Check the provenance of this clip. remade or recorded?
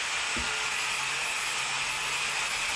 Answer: recorded